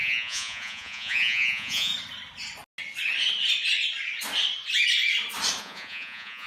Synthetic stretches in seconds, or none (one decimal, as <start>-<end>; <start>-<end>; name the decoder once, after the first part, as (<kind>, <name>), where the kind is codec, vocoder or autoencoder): 0.0-1.9 (vocoder, Vocos); 5.6-6.5